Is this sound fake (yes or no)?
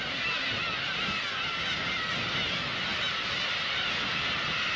no